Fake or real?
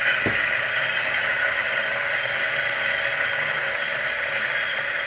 real